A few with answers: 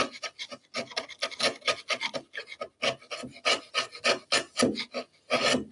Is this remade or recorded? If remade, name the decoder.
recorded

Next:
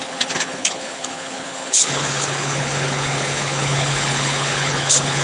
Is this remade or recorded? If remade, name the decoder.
remade, codec, HILCodec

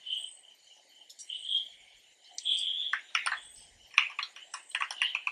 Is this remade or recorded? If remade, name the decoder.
recorded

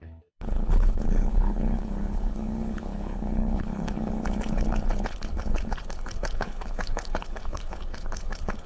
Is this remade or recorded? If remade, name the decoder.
remade, codec, HILCodec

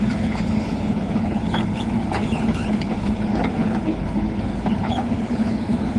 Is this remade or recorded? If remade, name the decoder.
remade, codec, HILCodec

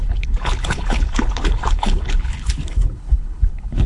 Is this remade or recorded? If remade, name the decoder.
remade, codec, HILCodec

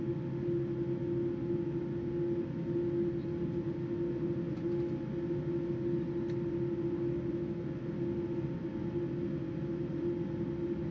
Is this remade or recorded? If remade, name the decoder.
recorded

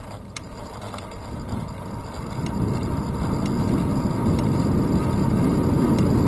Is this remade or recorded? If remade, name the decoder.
recorded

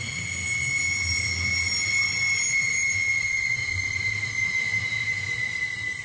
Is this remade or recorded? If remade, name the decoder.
recorded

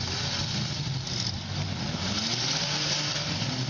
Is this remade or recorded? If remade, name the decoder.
recorded